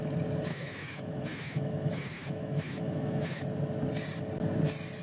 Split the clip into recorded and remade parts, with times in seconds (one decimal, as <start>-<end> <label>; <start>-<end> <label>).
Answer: 0.0-0.5 recorded; 0.5-3.4 remade; 3.4-5.0 recorded